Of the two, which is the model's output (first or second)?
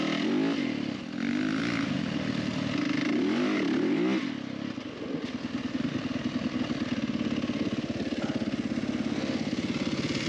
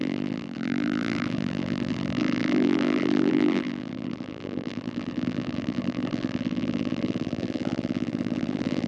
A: second